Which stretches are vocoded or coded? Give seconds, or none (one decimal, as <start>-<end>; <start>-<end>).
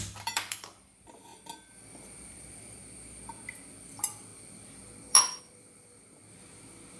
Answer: 0.0-1.3; 2.3-2.8; 3.7-7.0